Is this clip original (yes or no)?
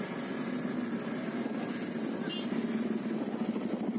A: yes